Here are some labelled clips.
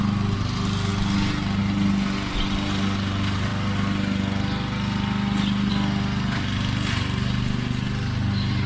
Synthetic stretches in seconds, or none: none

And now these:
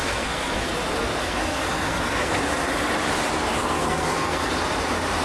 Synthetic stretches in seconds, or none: 0.0-0.7 (codec, SNAC); 1.2-2.3; 3.6-4.5

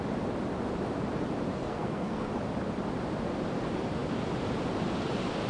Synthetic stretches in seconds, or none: 1.5-2.3 (codec, SNAC)

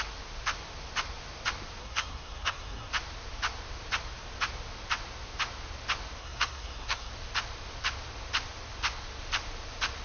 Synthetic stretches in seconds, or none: 1.8-2.9 (codec, SNAC); 6.2-7.1